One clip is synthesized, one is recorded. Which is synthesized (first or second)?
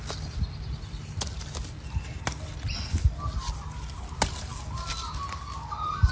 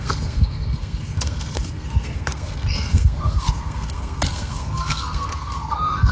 second